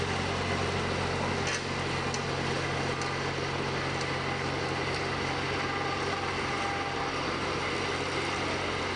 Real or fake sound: real